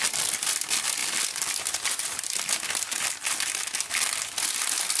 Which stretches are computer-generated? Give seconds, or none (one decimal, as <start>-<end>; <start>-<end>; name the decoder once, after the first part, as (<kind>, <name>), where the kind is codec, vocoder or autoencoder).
none